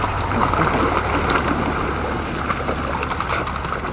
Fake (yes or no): no